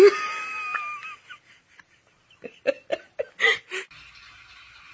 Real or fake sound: real